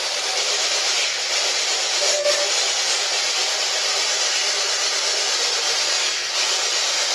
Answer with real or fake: fake